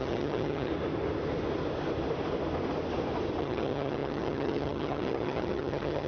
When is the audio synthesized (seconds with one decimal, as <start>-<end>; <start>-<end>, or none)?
0.0-0.7; 3.4-6.1